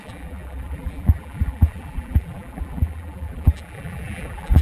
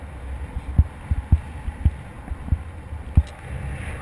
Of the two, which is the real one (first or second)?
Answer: second